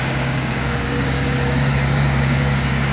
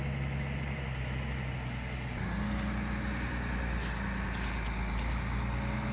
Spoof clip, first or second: first